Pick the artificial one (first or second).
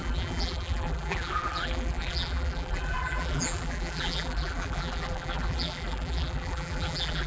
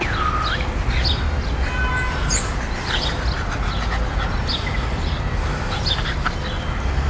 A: first